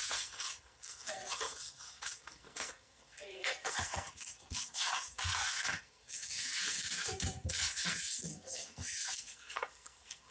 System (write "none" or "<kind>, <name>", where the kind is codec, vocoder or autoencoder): codec, SNAC